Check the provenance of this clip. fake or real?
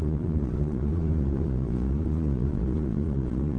fake